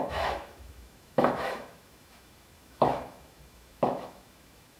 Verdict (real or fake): fake